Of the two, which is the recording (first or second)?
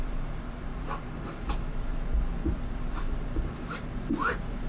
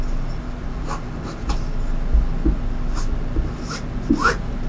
second